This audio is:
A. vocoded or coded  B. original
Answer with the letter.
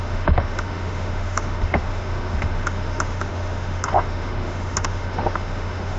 A